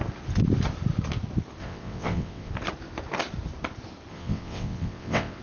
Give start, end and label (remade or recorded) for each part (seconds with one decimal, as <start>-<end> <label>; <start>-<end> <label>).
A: 0.0-1.6 recorded; 1.6-2.5 remade; 2.5-4.1 recorded; 4.1-5.4 remade